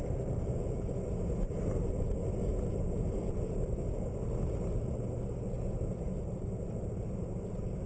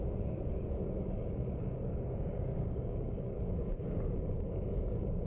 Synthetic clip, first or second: second